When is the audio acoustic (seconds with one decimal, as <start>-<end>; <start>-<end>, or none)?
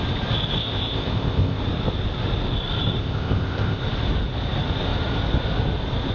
0.0-0.6; 1.6-3.0; 3.8-6.1